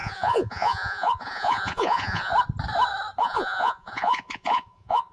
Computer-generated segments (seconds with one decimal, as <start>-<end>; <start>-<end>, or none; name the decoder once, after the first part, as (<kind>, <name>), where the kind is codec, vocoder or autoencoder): 0.0-2.3 (vocoder, Vocos); 3.2-5.1